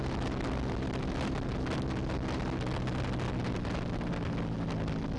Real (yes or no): yes